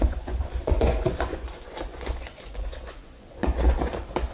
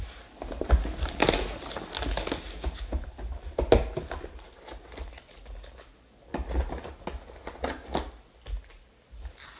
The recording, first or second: second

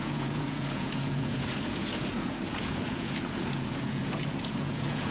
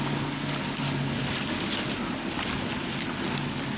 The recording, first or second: second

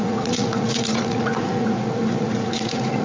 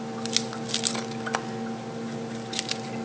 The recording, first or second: second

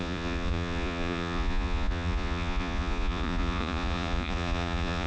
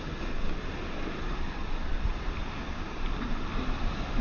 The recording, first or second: second